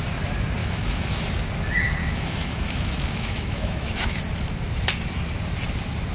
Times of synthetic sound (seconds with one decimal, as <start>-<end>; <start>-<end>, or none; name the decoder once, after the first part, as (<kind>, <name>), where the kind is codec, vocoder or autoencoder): 0.6-1.2 (autoencoder, DAC-VAE); 2.0-4.2